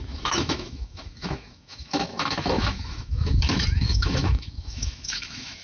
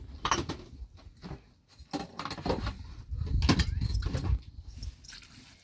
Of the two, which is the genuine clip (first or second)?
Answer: second